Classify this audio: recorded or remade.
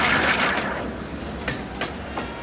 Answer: recorded